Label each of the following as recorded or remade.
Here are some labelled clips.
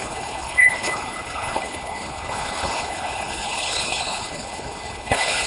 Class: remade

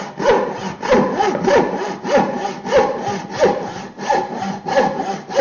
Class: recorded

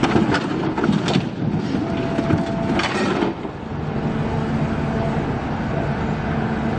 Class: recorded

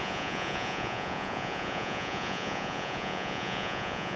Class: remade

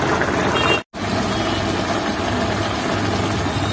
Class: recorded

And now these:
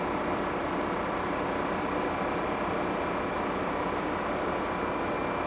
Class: recorded